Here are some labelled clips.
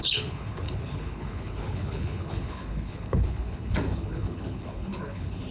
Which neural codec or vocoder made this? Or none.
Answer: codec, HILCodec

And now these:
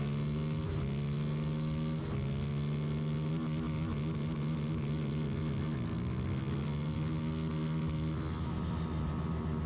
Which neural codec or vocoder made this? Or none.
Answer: none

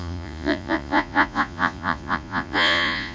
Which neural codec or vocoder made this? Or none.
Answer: vocoder, Vocos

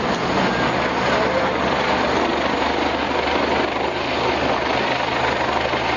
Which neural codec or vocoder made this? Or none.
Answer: none